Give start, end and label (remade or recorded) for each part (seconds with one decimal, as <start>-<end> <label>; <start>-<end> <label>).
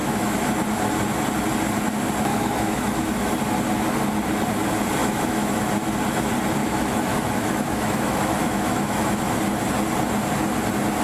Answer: 0.0-0.5 remade; 0.5-2.3 recorded; 2.3-3.3 remade; 3.3-5.0 recorded; 5.0-5.6 remade; 5.6-6.6 recorded; 6.6-9.4 remade; 9.4-11.0 recorded